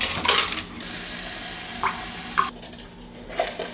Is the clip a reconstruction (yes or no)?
no